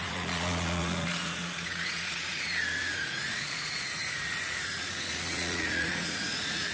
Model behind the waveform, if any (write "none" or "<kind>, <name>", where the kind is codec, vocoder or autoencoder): vocoder, Vocos